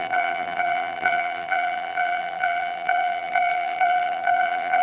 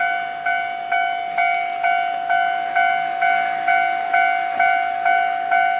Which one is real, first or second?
second